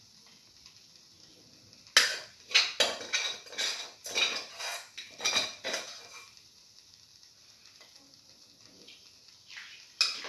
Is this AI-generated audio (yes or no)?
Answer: no